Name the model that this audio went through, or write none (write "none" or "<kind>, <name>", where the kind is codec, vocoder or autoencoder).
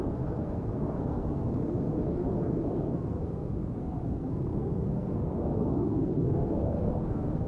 codec, SNAC